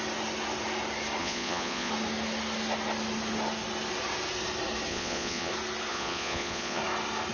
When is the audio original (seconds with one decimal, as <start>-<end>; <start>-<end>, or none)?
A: 0.0-1.2; 1.9-4.9; 5.5-5.9; 6.8-7.3